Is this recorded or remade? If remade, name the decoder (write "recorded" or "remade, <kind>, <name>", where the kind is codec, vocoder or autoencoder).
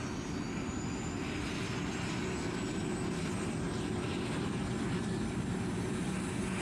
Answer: recorded